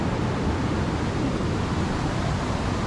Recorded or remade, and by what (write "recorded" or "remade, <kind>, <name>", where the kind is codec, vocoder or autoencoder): recorded